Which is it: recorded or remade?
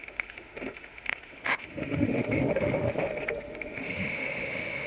remade